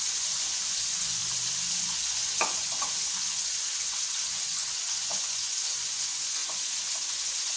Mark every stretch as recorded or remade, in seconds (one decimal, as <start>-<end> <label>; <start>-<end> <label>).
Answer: 0.0-1.2 remade; 1.2-1.7 recorded; 1.7-7.6 remade